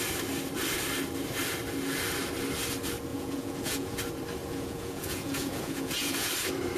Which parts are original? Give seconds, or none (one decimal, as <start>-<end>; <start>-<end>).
0.0-3.1; 4.0-4.4; 6.3-6.8